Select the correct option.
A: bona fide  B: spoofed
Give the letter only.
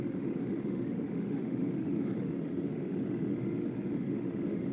B